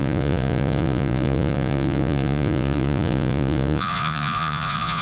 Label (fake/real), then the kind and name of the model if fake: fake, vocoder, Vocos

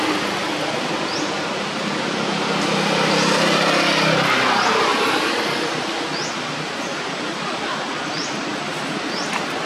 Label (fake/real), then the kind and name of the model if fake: real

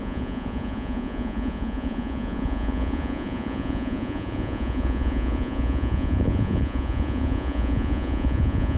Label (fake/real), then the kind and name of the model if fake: fake, vocoder, Vocos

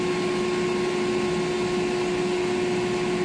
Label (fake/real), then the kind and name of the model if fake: real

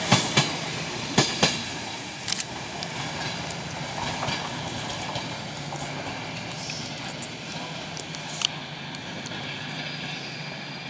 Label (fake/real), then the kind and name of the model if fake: real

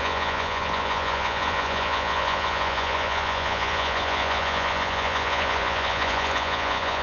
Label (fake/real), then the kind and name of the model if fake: fake, vocoder, Vocos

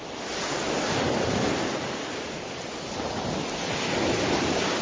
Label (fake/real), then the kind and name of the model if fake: real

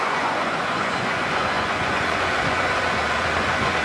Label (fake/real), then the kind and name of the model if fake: fake, vocoder, Vocos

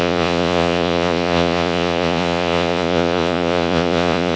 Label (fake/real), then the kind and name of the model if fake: fake, vocoder, Vocos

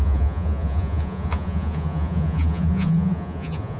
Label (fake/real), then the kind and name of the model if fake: fake, vocoder, Vocos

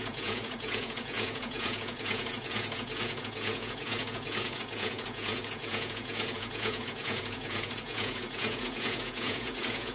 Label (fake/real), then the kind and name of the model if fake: fake, vocoder, Vocos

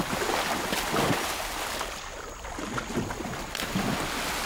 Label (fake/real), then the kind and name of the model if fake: real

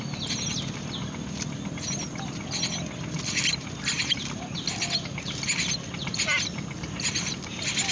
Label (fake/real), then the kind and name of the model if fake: real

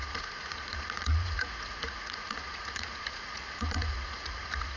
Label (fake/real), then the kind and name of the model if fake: fake, vocoder, Vocos